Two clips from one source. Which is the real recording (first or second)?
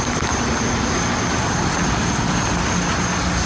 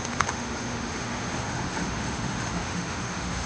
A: first